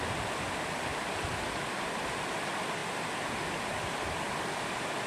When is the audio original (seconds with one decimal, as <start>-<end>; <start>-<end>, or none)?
0.0-5.1